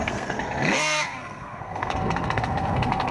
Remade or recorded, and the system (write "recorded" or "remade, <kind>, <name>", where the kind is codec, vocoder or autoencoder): remade, codec, SNAC